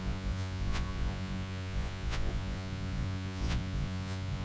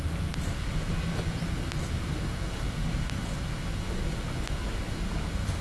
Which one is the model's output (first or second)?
first